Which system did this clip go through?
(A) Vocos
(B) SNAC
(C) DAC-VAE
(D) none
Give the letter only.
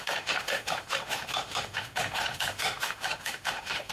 C